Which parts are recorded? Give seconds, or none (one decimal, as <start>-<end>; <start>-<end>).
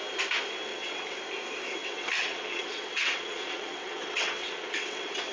0.0-0.7; 1.2-1.8